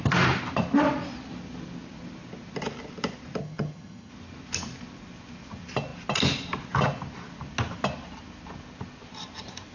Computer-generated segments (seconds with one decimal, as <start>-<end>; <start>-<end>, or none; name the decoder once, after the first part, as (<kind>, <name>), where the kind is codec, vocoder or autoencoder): 3.4-4.1 (vocoder, HiFi-GAN)